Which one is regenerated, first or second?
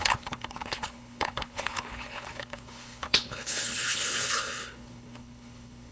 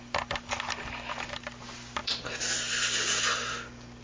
first